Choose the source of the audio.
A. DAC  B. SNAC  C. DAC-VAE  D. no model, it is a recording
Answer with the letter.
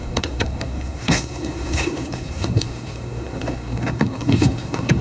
B